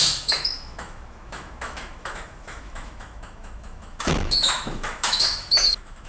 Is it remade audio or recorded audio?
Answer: remade